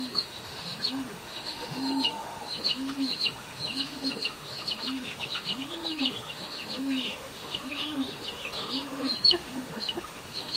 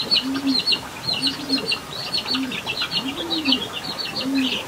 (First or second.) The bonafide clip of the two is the second